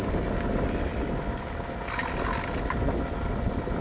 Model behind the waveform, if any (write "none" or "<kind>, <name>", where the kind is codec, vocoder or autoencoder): none